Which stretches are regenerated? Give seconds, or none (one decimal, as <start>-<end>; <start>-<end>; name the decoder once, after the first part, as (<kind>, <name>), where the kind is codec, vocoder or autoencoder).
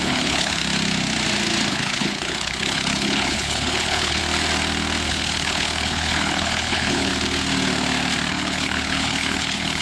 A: 0.0-0.6 (codec, HILCodec); 1.7-4.2; 5.1-7.1; 8.3-9.8